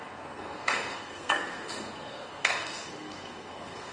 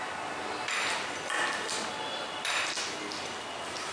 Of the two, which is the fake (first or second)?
first